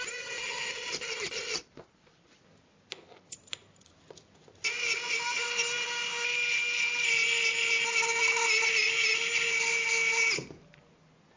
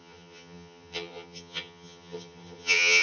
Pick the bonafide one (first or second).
first